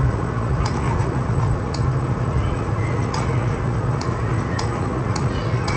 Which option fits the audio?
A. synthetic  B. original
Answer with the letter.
A